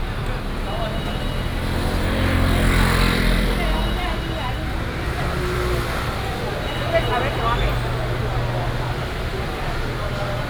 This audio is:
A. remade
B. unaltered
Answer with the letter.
B